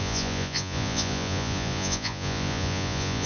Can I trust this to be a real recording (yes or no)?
no